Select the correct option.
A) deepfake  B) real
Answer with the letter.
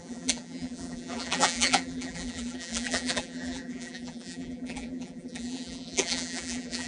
A